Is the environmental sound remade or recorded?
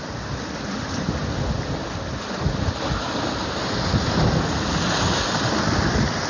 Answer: recorded